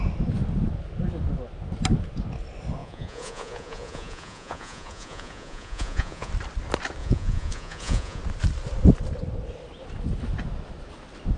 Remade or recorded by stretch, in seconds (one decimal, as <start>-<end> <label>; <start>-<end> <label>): 0.0-2.8 recorded; 2.8-6.3 remade; 6.3-7.0 recorded; 7.0-8.2 remade; 8.2-11.4 recorded